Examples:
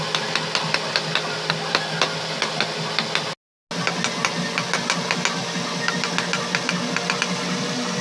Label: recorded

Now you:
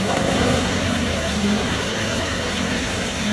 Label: remade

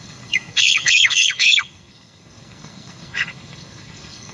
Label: remade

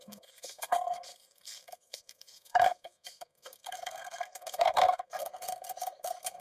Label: remade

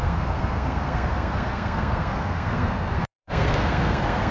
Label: remade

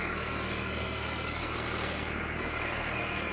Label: remade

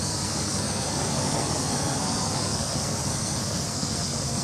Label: remade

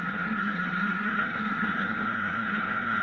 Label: remade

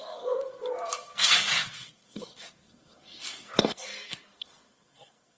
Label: remade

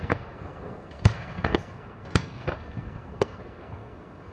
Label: remade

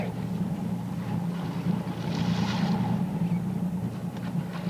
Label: recorded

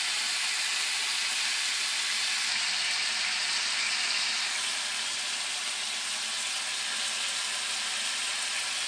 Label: recorded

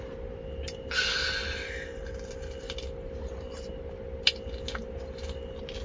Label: recorded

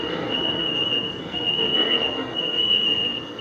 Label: remade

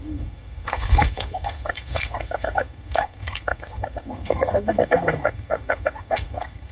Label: remade